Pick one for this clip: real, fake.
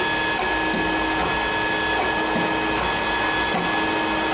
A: real